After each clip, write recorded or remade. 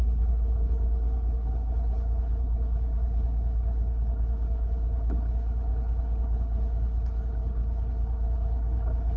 remade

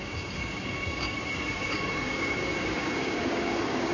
remade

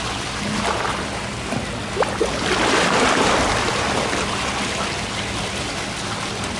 recorded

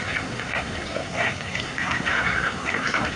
remade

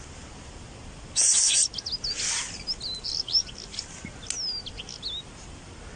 recorded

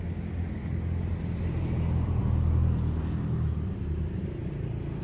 recorded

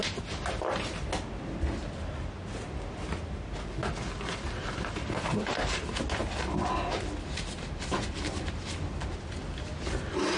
recorded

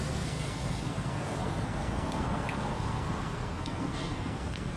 remade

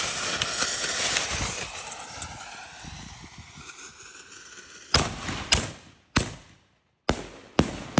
recorded